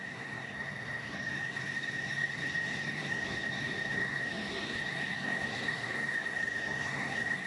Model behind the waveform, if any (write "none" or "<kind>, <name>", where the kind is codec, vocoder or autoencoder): codec, SNAC